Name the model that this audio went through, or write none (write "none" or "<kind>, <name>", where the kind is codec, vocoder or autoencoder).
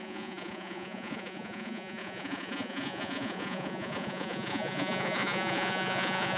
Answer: vocoder, Vocos